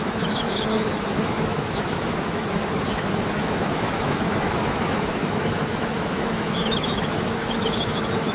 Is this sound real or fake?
fake